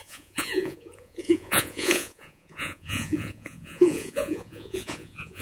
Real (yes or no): no